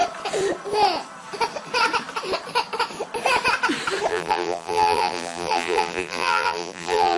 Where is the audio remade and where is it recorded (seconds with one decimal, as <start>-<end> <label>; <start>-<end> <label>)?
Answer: 0.0-4.1 recorded; 4.1-7.2 remade